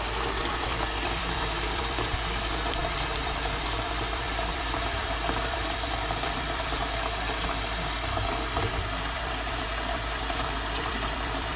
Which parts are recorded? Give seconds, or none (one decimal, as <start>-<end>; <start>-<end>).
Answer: none